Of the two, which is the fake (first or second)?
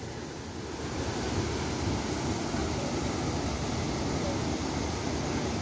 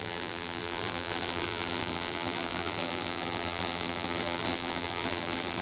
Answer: second